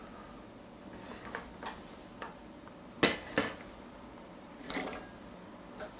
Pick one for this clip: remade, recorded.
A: recorded